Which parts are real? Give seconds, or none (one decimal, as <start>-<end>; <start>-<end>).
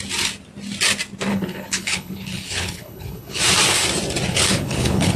0.0-1.3; 3.4-4.3